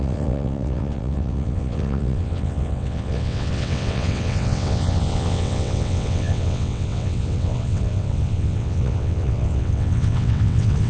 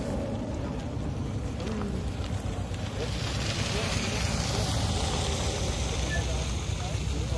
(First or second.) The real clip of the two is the second